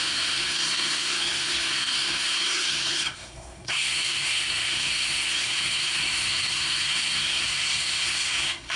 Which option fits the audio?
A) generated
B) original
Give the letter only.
A